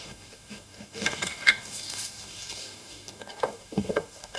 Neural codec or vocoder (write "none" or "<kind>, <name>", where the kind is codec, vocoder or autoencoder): codec, DAC